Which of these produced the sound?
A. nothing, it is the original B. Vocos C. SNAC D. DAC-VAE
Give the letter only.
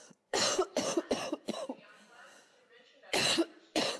B